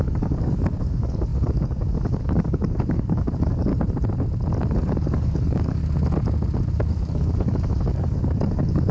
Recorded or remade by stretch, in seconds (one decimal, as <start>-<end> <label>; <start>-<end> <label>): 0.0-3.7 remade; 3.7-4.7 recorded; 4.7-5.8 remade; 5.8-6.9 recorded; 6.9-8.9 remade